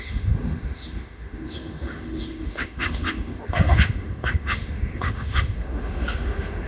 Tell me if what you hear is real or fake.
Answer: fake